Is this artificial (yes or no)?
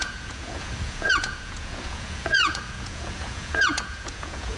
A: yes